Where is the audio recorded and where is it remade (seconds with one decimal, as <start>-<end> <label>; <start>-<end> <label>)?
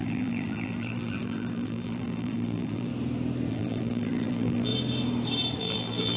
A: 0.0-2.9 remade; 2.9-3.5 recorded; 3.5-4.7 remade; 4.7-5.6 recorded; 5.6-6.2 remade